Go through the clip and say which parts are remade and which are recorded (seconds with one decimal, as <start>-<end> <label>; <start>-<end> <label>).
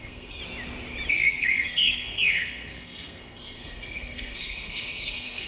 0.0-0.4 remade; 0.4-1.1 recorded; 1.1-5.5 remade